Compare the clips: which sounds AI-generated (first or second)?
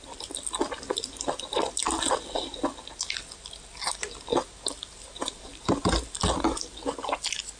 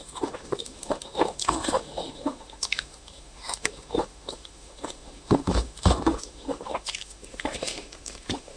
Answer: second